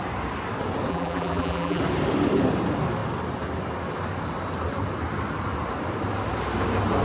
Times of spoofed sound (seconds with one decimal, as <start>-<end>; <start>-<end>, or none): 0.9-1.8